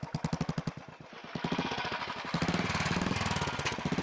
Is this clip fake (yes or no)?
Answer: no